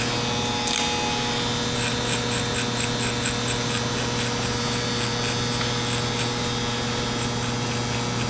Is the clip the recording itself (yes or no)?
yes